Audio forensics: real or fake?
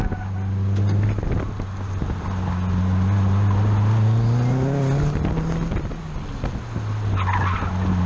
real